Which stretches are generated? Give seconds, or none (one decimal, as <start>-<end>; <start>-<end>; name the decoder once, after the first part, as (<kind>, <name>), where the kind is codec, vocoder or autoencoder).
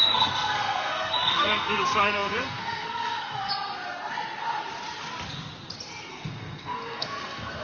0.0-3.5 (codec, SNAC); 6.1-7.6